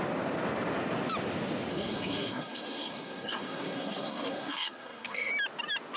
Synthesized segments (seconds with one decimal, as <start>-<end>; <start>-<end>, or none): 1.7-5.3